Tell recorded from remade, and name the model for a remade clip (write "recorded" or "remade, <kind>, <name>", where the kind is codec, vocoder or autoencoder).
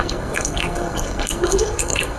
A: remade, codec, SNAC